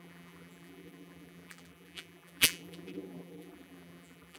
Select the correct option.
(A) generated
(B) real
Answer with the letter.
A